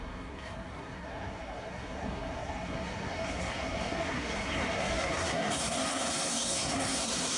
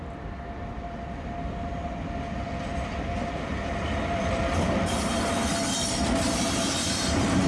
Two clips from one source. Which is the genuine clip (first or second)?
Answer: second